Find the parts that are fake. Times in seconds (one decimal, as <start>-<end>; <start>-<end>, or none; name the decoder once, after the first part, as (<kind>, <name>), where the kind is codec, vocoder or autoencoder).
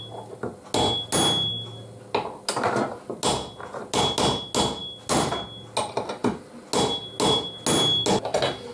none